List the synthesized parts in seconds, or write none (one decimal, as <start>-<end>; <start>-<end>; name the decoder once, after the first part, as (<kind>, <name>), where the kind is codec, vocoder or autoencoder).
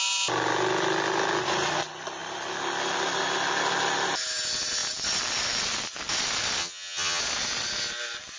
6.6-7.2 (vocoder, HiFi-GAN)